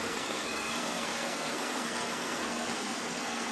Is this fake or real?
fake